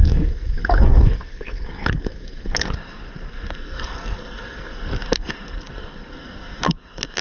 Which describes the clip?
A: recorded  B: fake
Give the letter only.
B